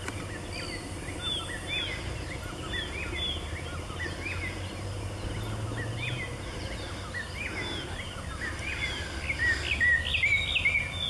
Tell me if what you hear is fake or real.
real